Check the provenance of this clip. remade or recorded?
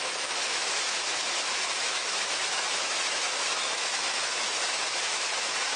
remade